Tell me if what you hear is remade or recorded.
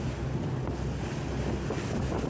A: recorded